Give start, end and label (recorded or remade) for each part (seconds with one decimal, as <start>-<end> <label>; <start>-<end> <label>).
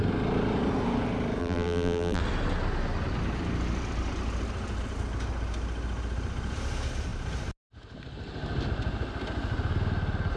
0.0-1.4 recorded; 1.4-2.2 remade; 2.2-10.4 recorded